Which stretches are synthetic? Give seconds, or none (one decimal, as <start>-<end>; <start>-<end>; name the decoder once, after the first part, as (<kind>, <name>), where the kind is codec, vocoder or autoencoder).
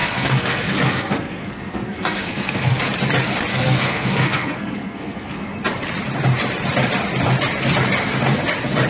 0.0-2.8 (codec, SNAC); 3.5-5.5